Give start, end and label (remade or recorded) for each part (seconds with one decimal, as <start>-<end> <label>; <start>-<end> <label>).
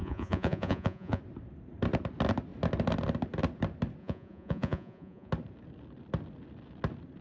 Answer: 0.0-1.2 remade; 1.2-4.0 recorded; 4.0-5.3 remade; 5.3-7.2 recorded